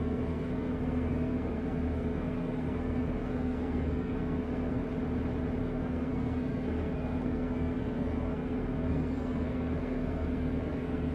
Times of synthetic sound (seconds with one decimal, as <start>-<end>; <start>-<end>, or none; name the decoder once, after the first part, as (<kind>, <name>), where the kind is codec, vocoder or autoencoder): 0.0-4.8 (codec, SNAC); 5.6-11.1